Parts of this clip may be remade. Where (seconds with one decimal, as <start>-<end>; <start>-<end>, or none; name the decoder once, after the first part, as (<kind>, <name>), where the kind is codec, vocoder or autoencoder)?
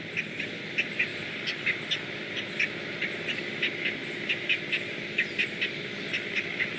none